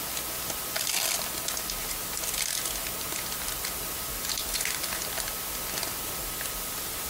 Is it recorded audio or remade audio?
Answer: recorded